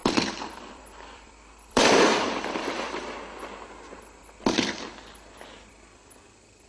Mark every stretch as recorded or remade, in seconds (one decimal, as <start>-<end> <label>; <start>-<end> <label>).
0.0-2.9 remade; 2.9-6.7 recorded